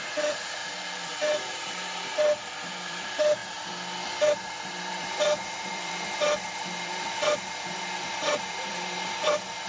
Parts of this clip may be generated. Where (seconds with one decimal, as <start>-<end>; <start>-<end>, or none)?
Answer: 0.0-3.4; 4.3-9.7